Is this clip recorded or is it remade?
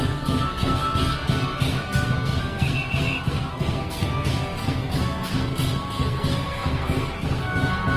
remade